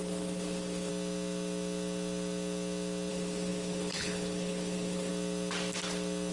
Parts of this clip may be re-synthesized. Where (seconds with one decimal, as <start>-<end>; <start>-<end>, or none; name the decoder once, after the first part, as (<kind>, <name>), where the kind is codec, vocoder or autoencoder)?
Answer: 0.0-0.9 (codec, HILCodec); 3.1-5.1